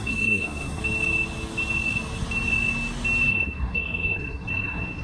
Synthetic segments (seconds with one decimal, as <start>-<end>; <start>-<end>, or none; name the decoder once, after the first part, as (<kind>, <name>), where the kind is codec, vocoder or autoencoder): 0.0-0.8 (codec, SNAC); 3.3-5.0